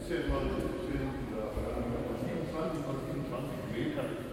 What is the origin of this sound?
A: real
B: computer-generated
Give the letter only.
B